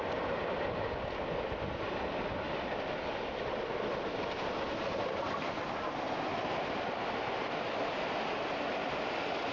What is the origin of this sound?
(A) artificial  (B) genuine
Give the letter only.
B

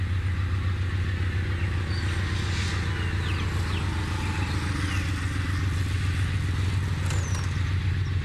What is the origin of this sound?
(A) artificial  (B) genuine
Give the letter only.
B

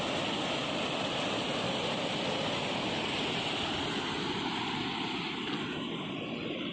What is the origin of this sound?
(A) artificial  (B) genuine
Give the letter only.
B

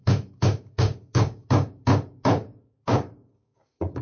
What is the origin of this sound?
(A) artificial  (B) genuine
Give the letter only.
A